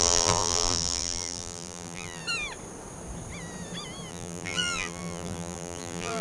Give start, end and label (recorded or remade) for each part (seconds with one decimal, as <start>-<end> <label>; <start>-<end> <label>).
0.0-2.2 remade; 2.2-4.1 recorded; 4.1-6.2 remade